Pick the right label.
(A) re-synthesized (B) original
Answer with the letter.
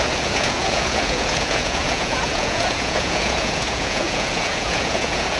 A